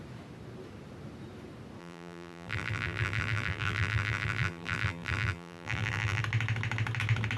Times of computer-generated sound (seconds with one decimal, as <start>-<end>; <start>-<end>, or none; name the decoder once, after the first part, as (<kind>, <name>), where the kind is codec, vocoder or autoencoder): 1.8-6.2 (vocoder, BigVGAN v2)